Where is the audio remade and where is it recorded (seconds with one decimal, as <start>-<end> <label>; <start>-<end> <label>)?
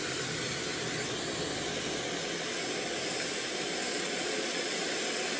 0.0-3.9 recorded; 3.9-4.7 remade; 4.7-5.4 recorded